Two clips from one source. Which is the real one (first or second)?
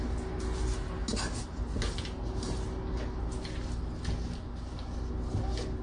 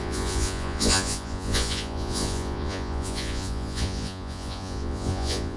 first